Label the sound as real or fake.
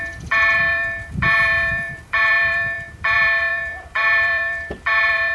fake